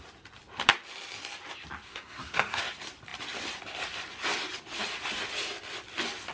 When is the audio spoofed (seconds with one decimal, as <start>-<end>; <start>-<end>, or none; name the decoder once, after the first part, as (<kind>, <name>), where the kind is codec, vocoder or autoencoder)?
1.9-2.6 (codec, SNAC)